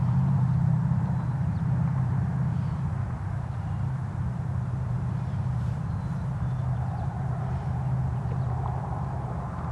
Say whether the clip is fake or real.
fake